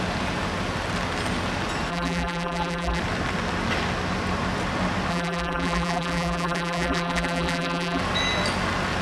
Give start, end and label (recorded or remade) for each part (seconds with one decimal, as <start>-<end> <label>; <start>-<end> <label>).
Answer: 0.0-1.9 recorded; 1.9-3.0 remade; 3.0-5.1 recorded; 5.1-8.0 remade; 8.0-9.0 recorded